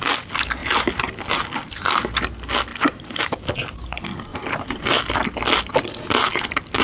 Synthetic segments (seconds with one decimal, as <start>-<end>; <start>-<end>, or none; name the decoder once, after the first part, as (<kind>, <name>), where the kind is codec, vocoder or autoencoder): 2.7-3.2 (vocoder, BigVGAN v2); 4.3-5.0